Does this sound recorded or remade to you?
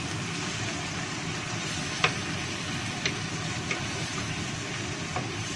recorded